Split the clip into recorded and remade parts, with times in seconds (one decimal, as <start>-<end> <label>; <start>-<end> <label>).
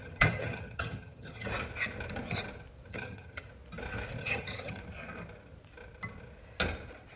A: 0.0-1.5 remade; 1.5-2.9 recorded; 2.9-3.5 remade; 3.5-4.2 recorded; 4.2-4.8 remade; 4.8-7.2 recorded